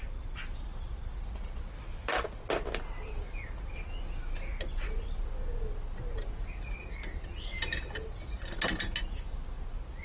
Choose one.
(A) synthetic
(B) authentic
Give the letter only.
B